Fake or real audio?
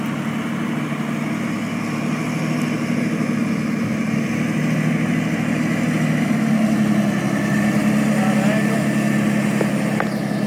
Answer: real